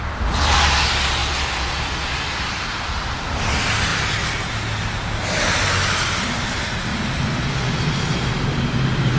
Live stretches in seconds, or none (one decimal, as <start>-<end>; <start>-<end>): 0.0-9.2